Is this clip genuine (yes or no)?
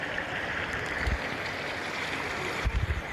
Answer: yes